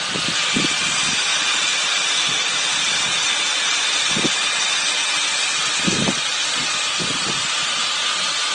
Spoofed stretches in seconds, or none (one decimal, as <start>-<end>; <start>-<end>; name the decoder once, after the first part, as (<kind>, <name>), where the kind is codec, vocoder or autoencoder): none